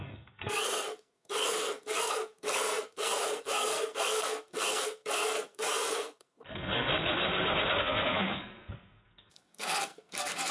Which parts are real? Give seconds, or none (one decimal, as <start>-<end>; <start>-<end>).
6.9-7.8